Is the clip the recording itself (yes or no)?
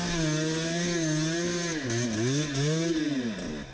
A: yes